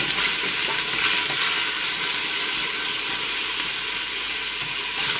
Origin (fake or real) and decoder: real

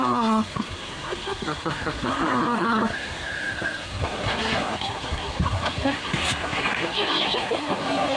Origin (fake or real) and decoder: fake, codec, SNAC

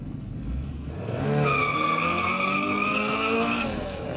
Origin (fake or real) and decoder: fake, codec, SNAC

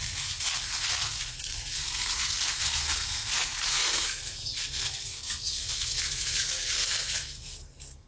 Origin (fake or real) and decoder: fake, codec, SNAC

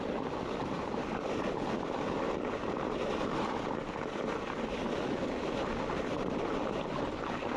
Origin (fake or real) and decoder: real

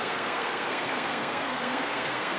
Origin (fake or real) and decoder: fake, codec, SNAC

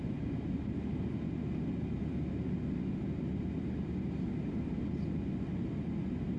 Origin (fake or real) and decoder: real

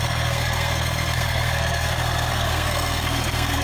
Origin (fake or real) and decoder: fake, codec, SNAC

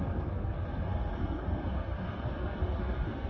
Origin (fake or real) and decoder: fake, codec, SNAC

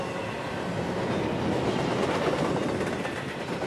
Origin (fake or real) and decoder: real